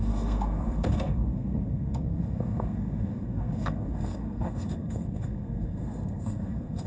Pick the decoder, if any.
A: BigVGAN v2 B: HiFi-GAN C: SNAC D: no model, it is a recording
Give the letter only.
C